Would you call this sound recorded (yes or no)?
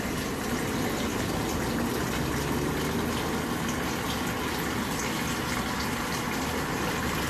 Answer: yes